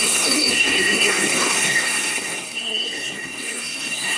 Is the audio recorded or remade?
remade